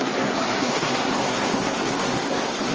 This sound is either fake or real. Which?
fake